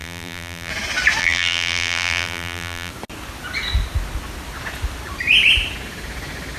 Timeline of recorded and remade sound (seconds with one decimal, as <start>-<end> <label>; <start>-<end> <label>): 0.0-0.7 remade; 0.7-1.2 recorded; 1.2-2.9 remade; 2.9-6.6 recorded